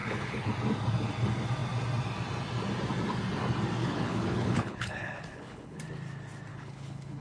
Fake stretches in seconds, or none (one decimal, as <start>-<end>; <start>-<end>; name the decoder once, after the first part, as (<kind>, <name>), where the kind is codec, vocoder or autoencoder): 0.0-0.5 (codec, HILCodec); 3.8-5.8; 6.5-7.2